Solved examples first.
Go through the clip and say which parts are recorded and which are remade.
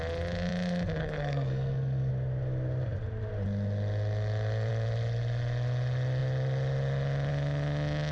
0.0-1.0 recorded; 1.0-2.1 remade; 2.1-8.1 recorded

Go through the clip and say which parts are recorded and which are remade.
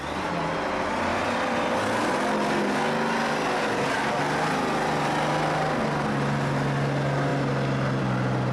0.0-8.5 recorded